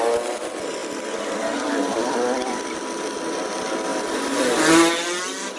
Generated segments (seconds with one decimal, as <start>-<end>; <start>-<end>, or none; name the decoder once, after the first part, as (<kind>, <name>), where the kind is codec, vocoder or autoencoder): 0.8-2.5 (vocoder, BigVGAN v2)